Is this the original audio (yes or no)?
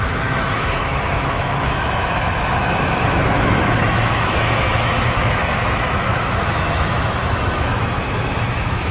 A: no